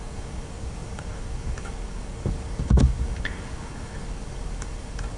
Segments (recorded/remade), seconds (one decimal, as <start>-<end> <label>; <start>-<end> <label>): 0.0-5.2 remade